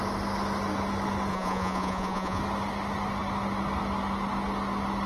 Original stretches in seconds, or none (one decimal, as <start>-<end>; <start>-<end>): 0.0-1.3; 2.4-5.1